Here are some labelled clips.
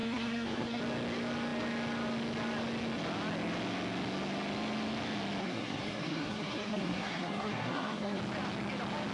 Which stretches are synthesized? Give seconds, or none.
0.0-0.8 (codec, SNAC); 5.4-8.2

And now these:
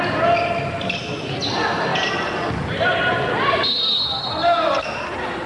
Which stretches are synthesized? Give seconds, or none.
none